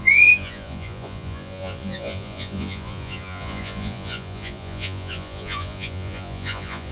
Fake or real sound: fake